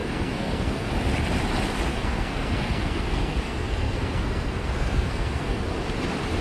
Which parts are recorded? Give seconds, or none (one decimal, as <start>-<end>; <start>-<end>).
0.9-1.9; 5.6-6.4